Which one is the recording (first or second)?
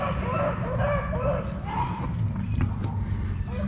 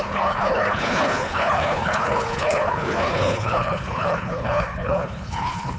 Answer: first